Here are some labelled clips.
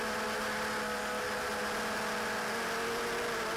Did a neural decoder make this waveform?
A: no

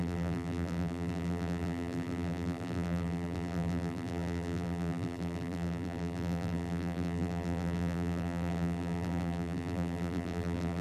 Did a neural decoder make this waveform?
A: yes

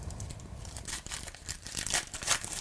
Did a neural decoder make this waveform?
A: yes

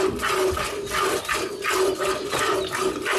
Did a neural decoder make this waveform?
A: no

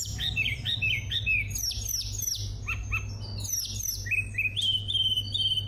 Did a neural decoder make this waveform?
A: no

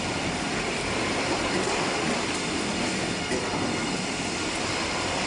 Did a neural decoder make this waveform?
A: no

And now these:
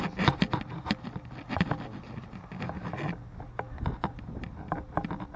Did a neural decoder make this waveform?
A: no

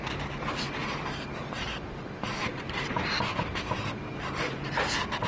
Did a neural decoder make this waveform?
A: yes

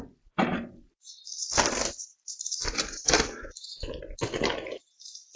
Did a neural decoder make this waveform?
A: yes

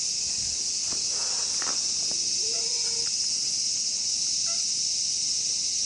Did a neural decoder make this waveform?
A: no